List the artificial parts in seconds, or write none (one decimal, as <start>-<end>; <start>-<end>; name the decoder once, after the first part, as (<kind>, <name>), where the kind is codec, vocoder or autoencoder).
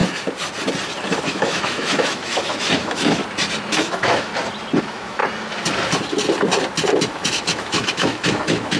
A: 1.2-3.2 (autoencoder, DAC-VAE); 3.7-4.3; 4.8-5.2; 7.1-8.8